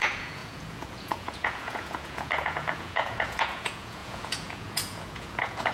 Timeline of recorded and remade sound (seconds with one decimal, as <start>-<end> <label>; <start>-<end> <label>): 0.0-5.7 remade